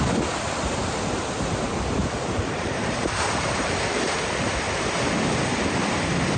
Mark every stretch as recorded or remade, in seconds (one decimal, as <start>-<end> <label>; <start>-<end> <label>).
0.0-2.0 recorded; 2.0-4.5 remade; 4.5-6.4 recorded